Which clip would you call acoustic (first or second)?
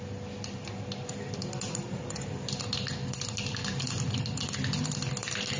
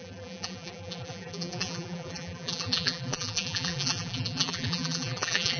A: first